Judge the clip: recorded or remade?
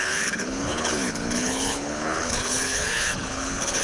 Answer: remade